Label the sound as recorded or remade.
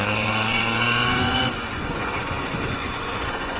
remade